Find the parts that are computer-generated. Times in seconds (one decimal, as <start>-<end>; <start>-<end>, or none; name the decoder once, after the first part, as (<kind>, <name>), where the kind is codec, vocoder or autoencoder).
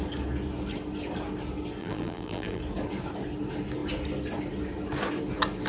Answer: 1.8-2.6 (vocoder, BigVGAN v2)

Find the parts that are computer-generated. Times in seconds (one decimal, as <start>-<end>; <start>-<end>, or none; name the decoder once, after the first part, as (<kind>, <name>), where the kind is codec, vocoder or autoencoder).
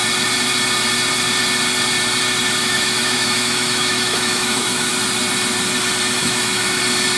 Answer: 2.6-4.9 (autoencoder, DAC-VAE); 6.2-6.8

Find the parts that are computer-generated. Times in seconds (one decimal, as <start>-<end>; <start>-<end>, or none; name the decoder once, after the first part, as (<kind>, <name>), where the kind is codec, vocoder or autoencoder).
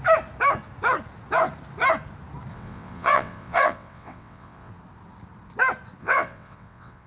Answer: 2.5-4.7 (vocoder, WaveNeXt); 6.0-7.1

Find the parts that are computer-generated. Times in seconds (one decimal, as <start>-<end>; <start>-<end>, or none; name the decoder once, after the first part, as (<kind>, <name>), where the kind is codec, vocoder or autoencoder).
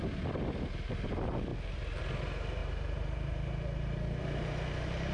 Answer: 2.6-5.1 (vocoder, BigVGAN v2)